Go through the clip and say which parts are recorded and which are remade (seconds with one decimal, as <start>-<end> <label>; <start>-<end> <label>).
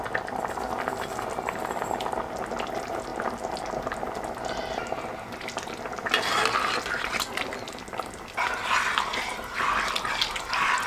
0.0-10.9 recorded